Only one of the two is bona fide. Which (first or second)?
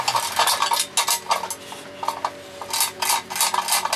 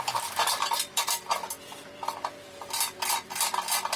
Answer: first